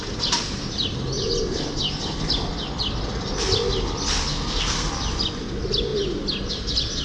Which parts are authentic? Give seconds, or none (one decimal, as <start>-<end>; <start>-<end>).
0.0-4.3; 4.9-7.0